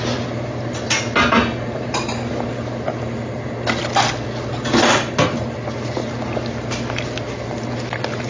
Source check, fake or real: real